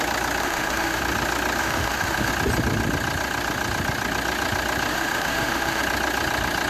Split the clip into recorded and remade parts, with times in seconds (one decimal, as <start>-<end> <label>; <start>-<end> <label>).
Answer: 0.0-0.4 recorded; 0.4-1.0 remade; 1.0-1.6 recorded; 1.6-2.3 remade; 2.3-4.9 recorded; 4.9-5.8 remade; 5.8-6.7 recorded